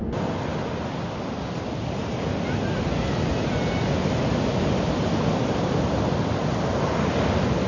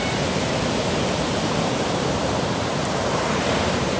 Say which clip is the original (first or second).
first